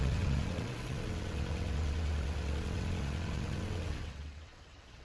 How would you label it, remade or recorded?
remade